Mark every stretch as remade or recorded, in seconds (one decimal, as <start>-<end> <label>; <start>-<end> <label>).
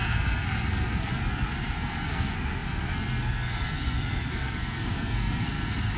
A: 0.0-6.0 remade